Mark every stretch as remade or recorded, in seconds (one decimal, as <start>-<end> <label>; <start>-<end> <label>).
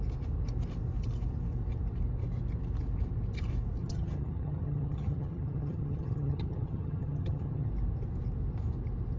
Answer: 0.0-3.8 recorded; 3.8-7.7 remade; 7.7-9.2 recorded